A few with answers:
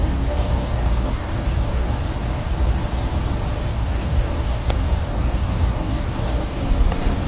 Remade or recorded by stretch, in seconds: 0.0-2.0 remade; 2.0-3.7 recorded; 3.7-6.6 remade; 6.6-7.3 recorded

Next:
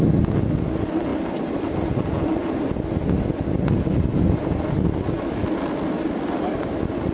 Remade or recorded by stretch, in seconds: 0.0-7.1 recorded

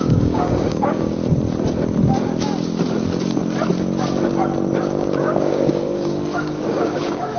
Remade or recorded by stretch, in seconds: 0.0-1.2 remade; 1.2-4.8 recorded; 4.8-7.4 remade

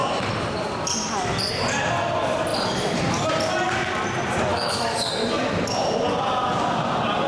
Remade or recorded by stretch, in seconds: 0.0-4.5 recorded; 4.5-5.1 remade; 5.1-7.3 recorded